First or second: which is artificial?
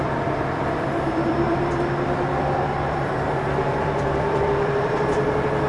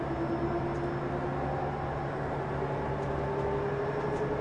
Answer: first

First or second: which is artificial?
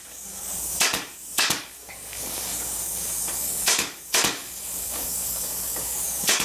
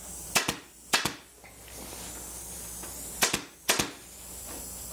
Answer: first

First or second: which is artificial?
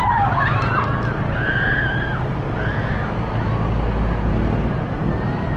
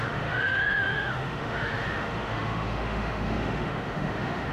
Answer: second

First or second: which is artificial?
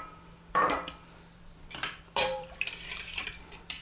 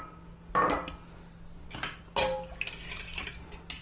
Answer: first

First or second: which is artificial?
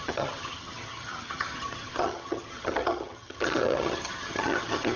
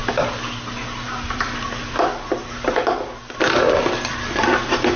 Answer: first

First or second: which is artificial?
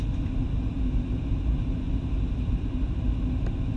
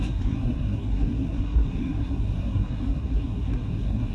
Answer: second